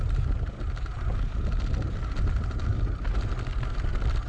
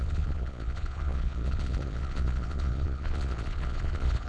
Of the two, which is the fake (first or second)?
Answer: second